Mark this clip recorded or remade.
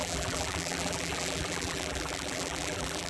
remade